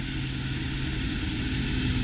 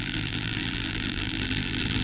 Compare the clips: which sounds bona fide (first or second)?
first